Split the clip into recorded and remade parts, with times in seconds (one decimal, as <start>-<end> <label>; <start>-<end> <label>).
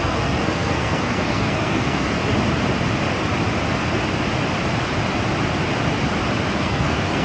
0.0-2.2 remade; 2.2-6.5 recorded; 6.5-7.2 remade